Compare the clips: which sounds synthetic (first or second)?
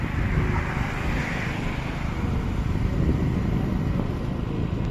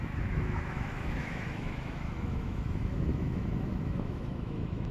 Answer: second